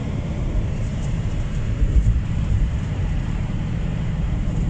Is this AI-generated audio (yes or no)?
yes